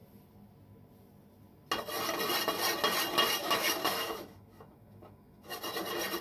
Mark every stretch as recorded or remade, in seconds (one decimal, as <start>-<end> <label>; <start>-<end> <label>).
0.0-3.4 recorded; 3.4-5.6 remade; 5.6-6.2 recorded

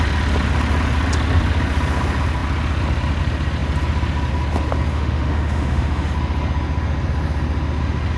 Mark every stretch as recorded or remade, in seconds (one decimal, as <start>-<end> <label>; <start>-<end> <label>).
0.0-4.9 recorded; 4.9-6.1 remade; 6.1-8.2 recorded

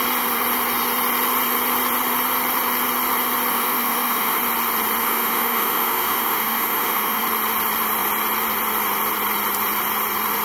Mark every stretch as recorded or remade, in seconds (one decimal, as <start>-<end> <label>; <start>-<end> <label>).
0.0-3.5 recorded; 3.5-4.4 remade; 4.4-5.0 recorded; 5.0-7.2 remade; 7.2-10.4 recorded

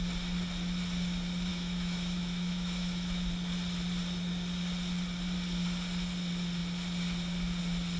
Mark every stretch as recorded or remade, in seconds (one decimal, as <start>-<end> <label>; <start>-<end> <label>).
0.0-1.5 recorded; 1.5-3.3 remade; 3.3-8.0 recorded

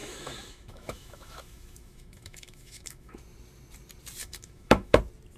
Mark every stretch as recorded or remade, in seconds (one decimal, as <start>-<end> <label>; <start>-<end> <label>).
0.0-3.2 remade; 3.2-4.2 recorded; 4.2-5.0 remade; 5.0-5.4 recorded

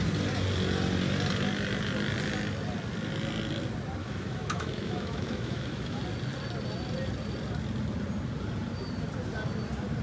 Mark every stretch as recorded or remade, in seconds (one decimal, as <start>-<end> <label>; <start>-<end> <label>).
0.0-4.0 recorded; 4.0-6.0 remade; 6.0-10.0 recorded